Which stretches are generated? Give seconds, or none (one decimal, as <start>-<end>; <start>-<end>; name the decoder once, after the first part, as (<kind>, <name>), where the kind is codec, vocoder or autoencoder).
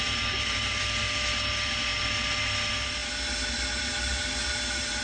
none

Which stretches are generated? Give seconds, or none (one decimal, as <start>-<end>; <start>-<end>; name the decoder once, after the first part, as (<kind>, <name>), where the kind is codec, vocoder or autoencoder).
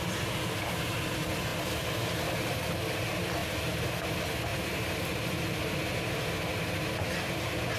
4.5-5.2 (vocoder, BigVGAN v2)